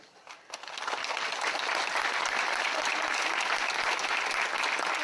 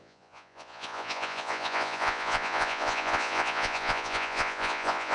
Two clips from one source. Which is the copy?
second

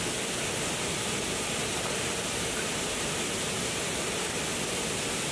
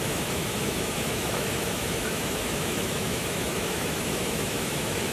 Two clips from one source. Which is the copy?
second